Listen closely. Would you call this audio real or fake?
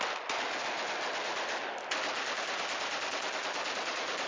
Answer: real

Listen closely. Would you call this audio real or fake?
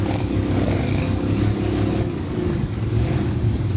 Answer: fake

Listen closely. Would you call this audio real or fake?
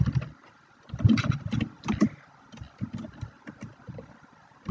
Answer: real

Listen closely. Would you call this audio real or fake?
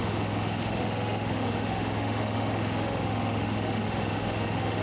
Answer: fake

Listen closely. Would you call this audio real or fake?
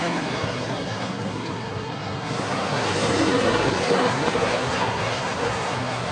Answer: fake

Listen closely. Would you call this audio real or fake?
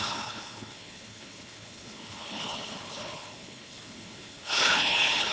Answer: fake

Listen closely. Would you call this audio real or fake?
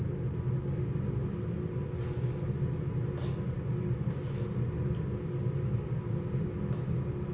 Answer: real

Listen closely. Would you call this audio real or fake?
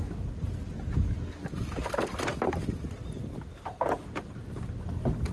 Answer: real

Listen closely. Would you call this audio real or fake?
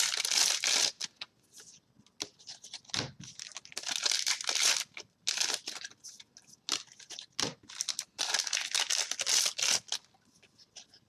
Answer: real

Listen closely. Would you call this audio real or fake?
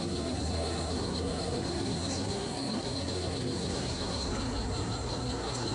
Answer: fake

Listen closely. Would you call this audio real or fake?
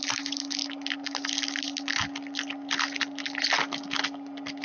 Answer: real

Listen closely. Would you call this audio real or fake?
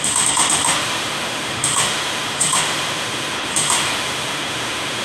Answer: fake